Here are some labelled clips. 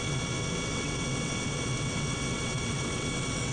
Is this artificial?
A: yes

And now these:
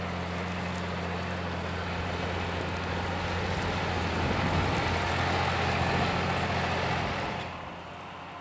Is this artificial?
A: no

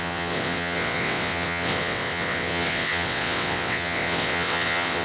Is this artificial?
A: yes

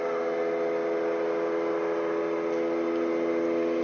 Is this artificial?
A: no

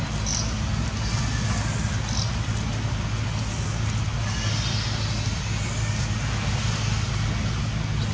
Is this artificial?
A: no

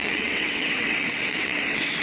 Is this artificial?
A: yes